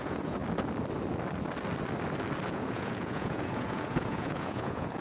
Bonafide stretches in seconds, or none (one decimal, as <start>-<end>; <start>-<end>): 0.4-2.5